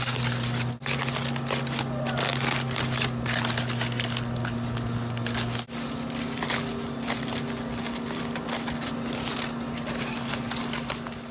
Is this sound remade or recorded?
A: recorded